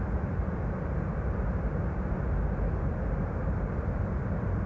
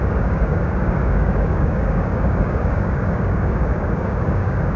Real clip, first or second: first